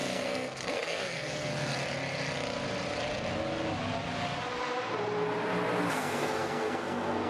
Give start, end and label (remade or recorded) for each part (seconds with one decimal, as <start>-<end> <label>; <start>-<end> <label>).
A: 0.0-1.5 remade; 1.5-5.9 recorded; 5.9-7.3 remade

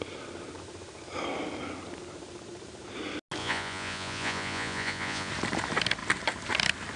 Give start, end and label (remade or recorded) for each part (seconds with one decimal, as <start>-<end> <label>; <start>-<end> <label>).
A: 0.0-3.4 recorded; 3.4-5.3 remade; 5.3-7.0 recorded

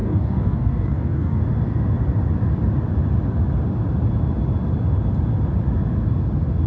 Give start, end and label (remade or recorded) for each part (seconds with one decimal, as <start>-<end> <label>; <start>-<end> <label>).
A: 0.0-1.4 remade; 1.4-6.7 recorded